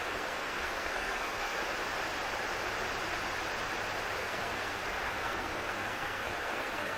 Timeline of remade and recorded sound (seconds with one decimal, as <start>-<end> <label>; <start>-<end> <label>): 0.0-1.6 remade; 1.6-4.2 recorded; 4.2-7.0 remade